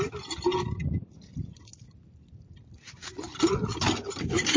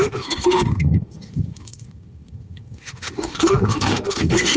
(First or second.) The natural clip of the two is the first